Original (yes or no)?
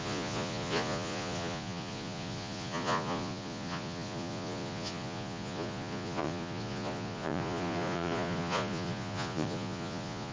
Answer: no